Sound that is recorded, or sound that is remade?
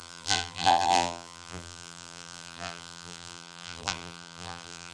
remade